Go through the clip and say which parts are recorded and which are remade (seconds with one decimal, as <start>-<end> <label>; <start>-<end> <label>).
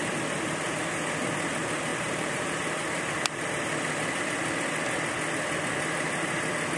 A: 0.0-1.9 recorded; 1.9-3.5 remade; 3.5-6.8 recorded